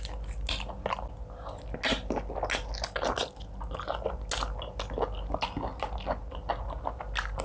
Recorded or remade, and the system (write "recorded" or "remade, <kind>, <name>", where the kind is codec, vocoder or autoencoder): recorded